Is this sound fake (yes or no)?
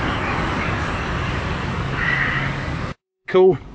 yes